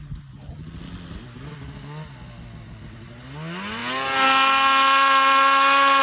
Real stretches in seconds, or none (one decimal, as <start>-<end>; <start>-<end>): 0.0-6.0